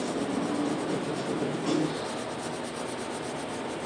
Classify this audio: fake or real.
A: real